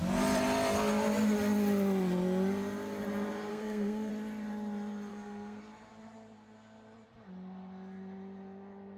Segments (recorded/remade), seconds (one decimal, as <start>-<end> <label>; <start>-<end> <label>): 0.0-3.5 recorded; 3.5-4.1 remade; 4.1-5.1 recorded; 5.1-5.6 remade; 5.6-9.0 recorded